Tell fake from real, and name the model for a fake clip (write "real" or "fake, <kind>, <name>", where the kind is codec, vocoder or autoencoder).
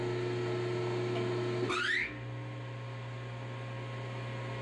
real